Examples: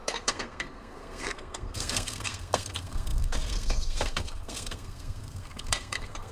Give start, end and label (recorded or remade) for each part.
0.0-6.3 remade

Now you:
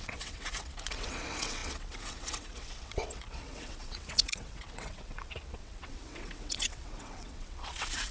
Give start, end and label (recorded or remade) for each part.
0.0-8.1 remade

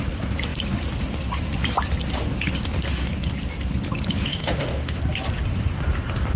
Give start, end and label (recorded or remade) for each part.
0.0-4.3 recorded; 4.3-5.0 remade; 5.0-6.4 recorded

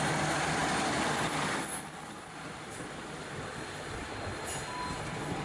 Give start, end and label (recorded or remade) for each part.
0.0-5.4 recorded

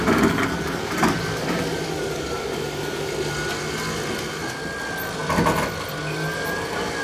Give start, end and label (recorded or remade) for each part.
0.0-3.1 remade; 3.1-7.0 recorded

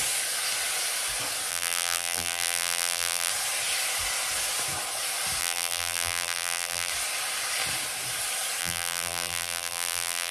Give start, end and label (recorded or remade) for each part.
0.0-1.5 recorded; 1.5-3.3 remade; 3.3-5.4 recorded; 5.4-6.9 remade; 6.9-8.6 recorded; 8.6-10.3 remade

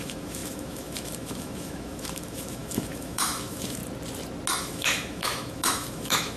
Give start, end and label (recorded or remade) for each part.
0.0-3.8 remade; 3.8-4.6 recorded; 4.6-6.4 remade